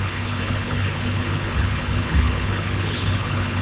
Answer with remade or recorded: remade